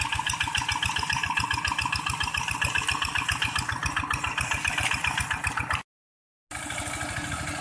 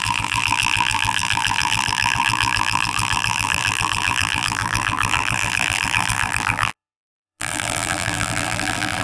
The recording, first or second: first